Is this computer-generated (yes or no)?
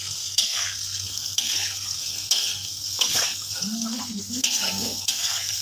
yes